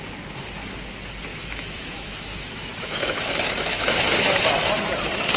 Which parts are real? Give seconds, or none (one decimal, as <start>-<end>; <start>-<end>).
0.0-1.3; 4.4-5.4